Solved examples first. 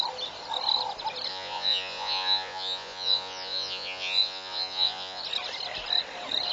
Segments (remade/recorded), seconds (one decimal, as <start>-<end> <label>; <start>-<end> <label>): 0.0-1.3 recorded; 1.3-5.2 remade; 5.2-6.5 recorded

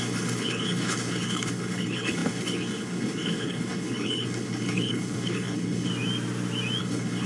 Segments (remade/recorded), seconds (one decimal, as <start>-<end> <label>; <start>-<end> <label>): 0.0-5.9 remade; 5.9-6.8 recorded; 6.8-7.3 remade

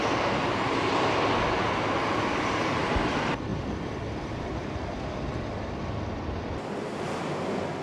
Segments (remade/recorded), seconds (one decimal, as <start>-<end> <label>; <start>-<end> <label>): 0.0-7.8 recorded

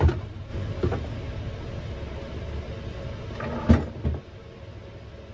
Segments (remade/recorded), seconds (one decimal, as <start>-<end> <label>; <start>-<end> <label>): 0.0-5.3 recorded